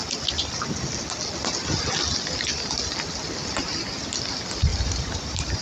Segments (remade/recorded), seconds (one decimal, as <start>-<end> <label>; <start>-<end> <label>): 0.0-4.7 recorded; 4.7-5.6 remade